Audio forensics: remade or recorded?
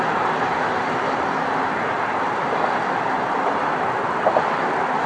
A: recorded